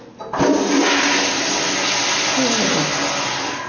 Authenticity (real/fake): real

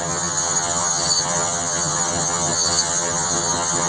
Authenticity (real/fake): fake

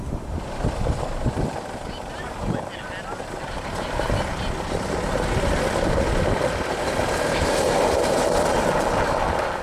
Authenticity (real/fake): real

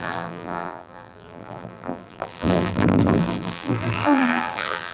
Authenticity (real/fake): fake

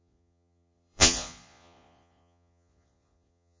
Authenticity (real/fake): fake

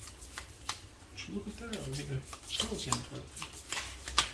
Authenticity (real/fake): real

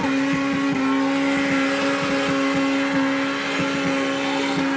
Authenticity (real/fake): real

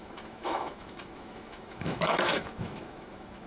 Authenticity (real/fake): fake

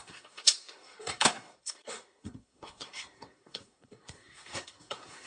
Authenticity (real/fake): fake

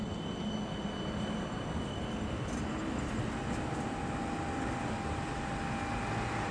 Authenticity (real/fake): real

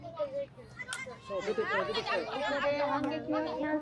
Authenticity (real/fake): real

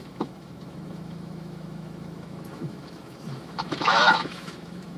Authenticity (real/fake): fake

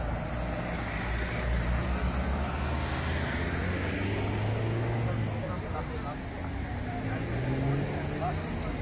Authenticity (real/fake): real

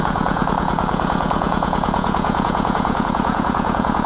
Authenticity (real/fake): fake